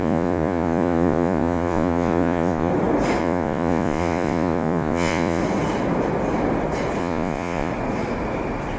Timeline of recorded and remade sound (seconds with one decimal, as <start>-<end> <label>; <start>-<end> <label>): 0.0-2.7 remade; 2.7-3.2 recorded; 3.2-5.4 remade; 5.4-7.0 recorded; 7.0-7.7 remade; 7.7-8.8 recorded